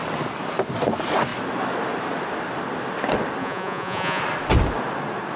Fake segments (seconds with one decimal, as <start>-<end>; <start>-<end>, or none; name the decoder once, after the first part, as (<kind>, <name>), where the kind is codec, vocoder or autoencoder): 3.4-4.2 (vocoder, Vocos)